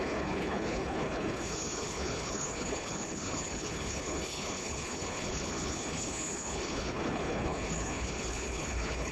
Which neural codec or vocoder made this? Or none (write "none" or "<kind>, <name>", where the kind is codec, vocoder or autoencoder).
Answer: codec, HILCodec